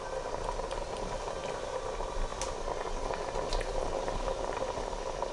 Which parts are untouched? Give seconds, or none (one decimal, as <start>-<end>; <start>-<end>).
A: 0.0-5.3